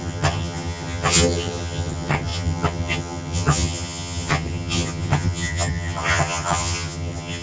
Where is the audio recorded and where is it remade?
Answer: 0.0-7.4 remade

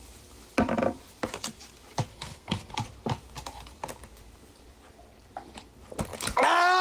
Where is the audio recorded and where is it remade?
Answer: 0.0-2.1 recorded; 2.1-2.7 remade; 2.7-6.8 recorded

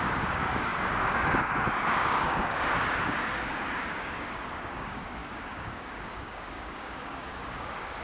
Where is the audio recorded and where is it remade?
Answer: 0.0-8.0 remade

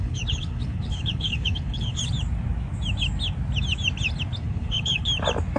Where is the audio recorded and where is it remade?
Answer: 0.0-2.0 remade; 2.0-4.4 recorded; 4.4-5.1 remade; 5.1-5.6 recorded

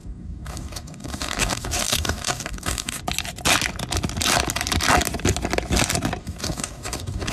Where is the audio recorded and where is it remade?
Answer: 0.0-3.0 remade; 3.0-6.2 recorded; 6.2-7.3 remade

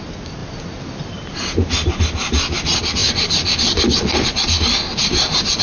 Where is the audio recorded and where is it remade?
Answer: 0.0-5.6 recorded

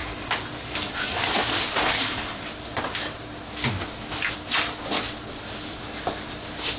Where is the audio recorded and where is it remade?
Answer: 0.0-0.9 recorded; 0.9-1.4 remade; 1.4-5.3 recorded; 5.3-6.8 remade